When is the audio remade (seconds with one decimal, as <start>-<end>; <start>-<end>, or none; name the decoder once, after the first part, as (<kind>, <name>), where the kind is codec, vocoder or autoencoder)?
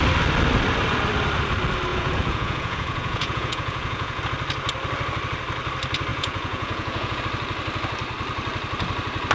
1.9-4.2 (vocoder, Vocos); 6.1-7.2